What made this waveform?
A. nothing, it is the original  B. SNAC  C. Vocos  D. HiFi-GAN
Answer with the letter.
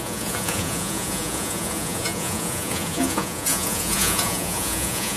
C